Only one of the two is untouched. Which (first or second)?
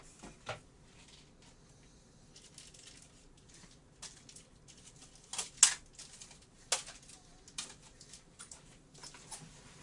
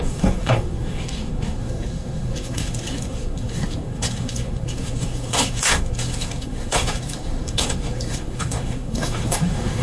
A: first